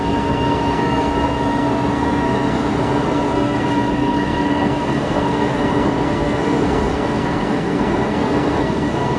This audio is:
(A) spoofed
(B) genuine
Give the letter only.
A